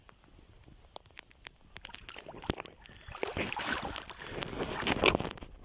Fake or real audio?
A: real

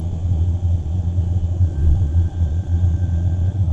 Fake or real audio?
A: fake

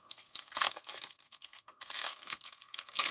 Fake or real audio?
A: fake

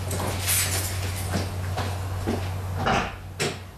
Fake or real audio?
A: real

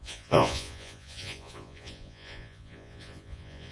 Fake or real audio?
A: fake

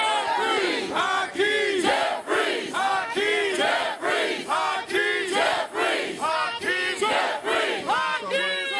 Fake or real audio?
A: real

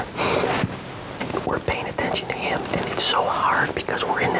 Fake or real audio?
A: real